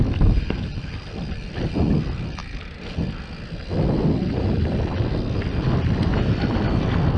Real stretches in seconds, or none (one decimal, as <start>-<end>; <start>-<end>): 0.0-7.2